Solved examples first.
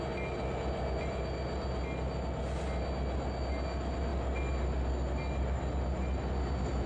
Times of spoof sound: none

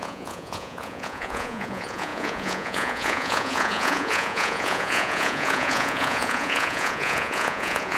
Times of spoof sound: 0.0-8.0 (vocoder, Vocos)